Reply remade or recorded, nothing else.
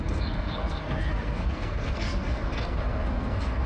remade